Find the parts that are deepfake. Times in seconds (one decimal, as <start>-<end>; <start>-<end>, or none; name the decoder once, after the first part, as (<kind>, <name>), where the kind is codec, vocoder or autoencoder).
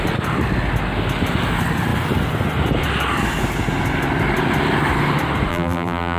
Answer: 5.5-6.2 (vocoder, BigVGAN v2)